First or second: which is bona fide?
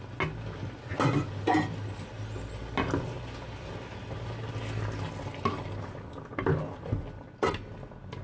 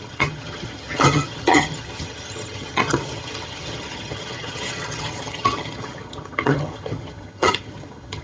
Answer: first